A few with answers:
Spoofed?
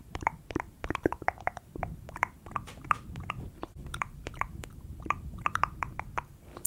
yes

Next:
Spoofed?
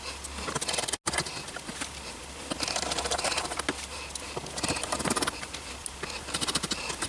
no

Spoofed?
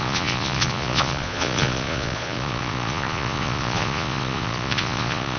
yes